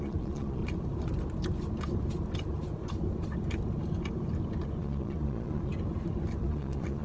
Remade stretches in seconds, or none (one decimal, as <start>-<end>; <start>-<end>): 0.0-0.6; 4.8-5.7; 6.4-7.0

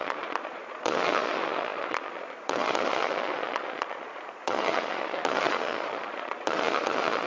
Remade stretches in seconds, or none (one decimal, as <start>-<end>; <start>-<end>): 0.0-7.3

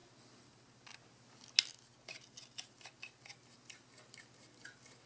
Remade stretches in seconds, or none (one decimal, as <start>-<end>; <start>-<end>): none

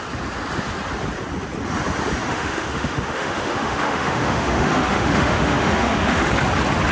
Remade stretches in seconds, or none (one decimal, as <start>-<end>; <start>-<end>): 2.3-6.3